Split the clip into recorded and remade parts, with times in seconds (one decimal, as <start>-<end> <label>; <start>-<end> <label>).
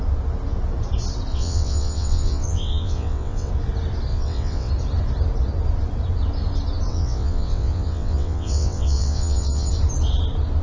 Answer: 0.0-1.3 recorded; 1.3-3.5 remade; 3.5-4.1 recorded; 4.1-4.7 remade; 4.7-6.9 recorded; 6.9-9.7 remade; 9.7-10.6 recorded